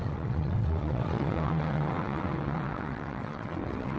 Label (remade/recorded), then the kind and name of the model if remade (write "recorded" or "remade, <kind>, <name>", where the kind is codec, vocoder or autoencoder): remade, vocoder, WaveNeXt